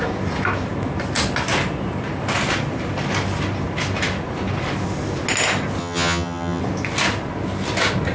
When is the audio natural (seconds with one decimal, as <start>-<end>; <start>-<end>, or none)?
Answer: 0.0-5.8; 6.6-8.1